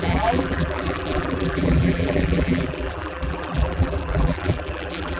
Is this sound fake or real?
fake